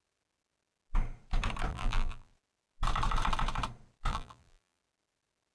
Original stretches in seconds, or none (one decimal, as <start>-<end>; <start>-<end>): 0.0-1.7; 2.3-4.1; 4.8-5.5